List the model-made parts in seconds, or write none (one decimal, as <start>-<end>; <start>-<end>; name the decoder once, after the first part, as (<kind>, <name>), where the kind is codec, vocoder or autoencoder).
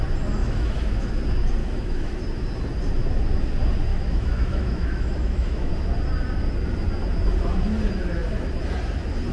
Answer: 0.4-1.1 (autoencoder, DAC-VAE); 1.6-2.2; 3.9-5.7